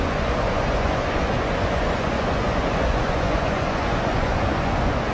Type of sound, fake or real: fake